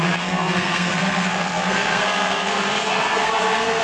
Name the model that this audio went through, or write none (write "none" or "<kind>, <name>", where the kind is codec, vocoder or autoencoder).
codec, SNAC